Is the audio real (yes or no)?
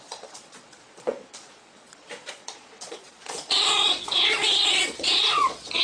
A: no